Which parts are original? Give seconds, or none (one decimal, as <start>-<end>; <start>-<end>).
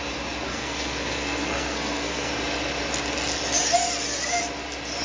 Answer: 0.0-0.5; 2.3-5.0